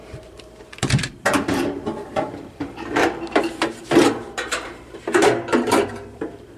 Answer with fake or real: fake